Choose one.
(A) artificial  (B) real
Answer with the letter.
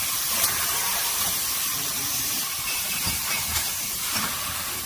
A